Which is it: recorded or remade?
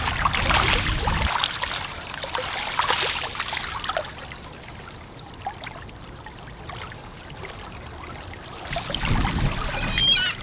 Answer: recorded